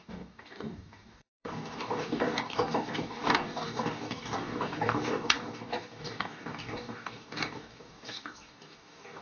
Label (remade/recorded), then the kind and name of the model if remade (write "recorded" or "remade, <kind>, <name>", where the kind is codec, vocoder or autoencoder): remade, codec, DAC